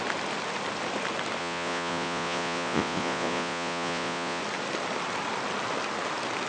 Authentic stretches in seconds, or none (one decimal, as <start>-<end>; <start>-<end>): 0.0-1.4; 4.4-6.5